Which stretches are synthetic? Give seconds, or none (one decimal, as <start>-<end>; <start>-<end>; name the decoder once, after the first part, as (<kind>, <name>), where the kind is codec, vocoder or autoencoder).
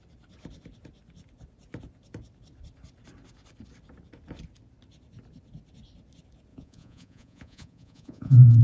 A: 6.5-8.6 (vocoder, Vocos)